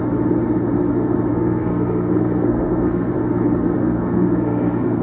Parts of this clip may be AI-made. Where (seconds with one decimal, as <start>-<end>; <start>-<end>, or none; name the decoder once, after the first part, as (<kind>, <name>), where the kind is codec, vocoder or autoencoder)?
1.3-3.1 (codec, SNAC); 3.8-5.0

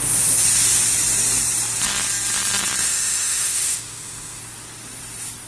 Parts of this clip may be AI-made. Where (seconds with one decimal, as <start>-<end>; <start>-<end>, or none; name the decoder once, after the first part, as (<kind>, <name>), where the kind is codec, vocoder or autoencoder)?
2.8-4.4 (autoencoder, DAC-VAE)

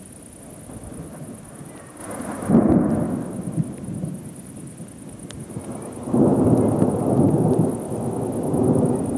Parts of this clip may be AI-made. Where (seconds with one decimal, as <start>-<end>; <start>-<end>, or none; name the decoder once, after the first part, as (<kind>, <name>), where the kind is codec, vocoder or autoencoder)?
none

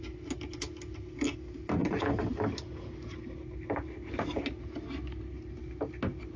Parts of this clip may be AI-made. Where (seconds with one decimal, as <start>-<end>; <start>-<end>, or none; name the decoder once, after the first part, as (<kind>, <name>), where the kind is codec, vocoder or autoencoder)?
none